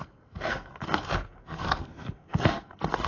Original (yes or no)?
no